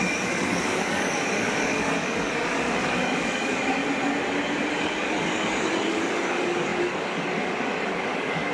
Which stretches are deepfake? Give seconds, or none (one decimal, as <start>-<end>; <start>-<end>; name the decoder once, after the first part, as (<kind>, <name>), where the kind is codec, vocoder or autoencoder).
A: 0.0-3.8 (codec, DAC); 4.7-8.5